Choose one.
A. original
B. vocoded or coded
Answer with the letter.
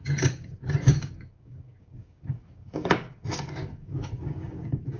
B